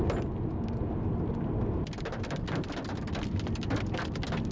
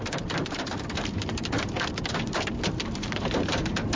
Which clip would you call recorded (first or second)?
first